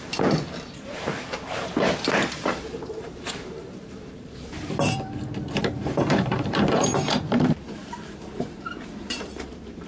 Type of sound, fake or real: fake